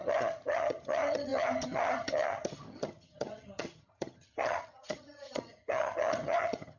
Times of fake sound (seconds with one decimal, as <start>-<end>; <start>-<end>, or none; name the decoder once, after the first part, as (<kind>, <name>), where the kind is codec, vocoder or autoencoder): 0.0-6.8 (vocoder, HiFi-GAN)